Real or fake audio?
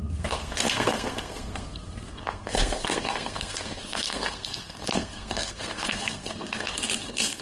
fake